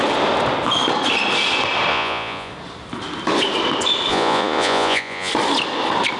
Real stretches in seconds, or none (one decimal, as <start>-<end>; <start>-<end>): 0.0-1.9; 2.5-4.1; 5.3-6.2